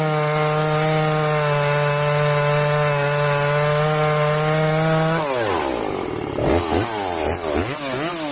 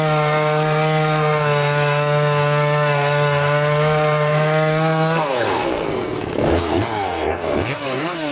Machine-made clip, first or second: second